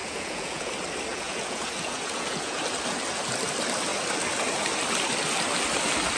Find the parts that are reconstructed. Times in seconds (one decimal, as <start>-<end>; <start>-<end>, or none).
0.0-0.7; 1.1-2.6